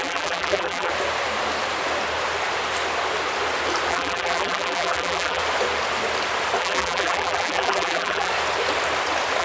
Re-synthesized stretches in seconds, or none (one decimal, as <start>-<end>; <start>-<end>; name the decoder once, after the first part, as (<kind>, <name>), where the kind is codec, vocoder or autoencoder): 0.0-0.9 (vocoder, BigVGAN v2); 3.9-5.4; 6.6-8.3